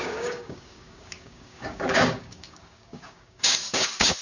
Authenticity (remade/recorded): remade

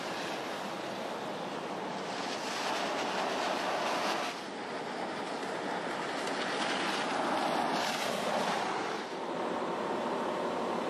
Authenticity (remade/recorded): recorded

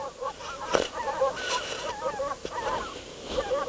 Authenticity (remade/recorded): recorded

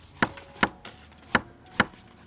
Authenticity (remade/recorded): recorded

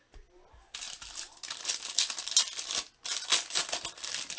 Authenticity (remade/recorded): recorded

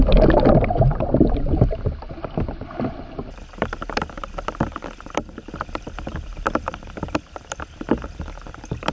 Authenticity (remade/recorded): remade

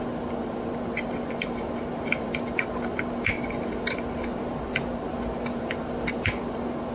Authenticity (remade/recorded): recorded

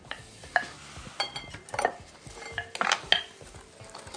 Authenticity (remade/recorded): recorded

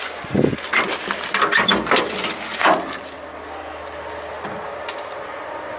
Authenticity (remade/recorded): recorded